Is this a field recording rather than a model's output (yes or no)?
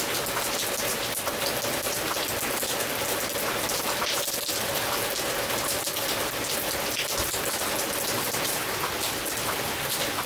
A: yes